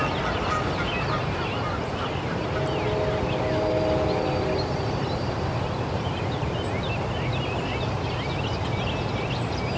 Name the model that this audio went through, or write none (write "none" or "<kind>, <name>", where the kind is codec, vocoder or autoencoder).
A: none